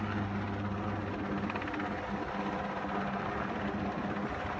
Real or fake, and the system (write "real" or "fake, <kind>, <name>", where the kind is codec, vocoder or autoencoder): real